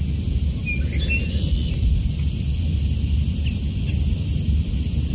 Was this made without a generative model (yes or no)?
yes